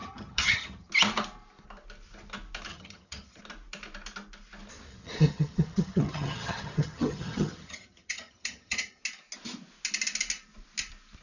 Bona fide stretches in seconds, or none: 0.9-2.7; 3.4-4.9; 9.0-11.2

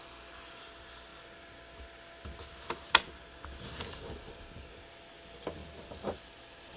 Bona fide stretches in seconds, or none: 0.0-6.8

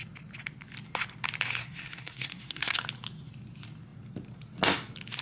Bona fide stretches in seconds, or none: 0.0-1.6; 2.8-5.2

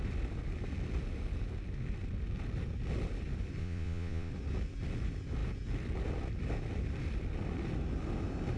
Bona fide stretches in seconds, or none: 0.0-3.6; 4.3-8.6